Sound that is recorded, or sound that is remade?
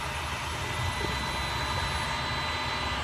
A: recorded